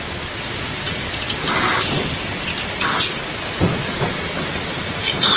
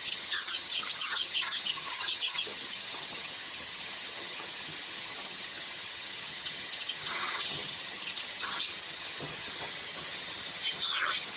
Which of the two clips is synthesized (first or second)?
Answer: second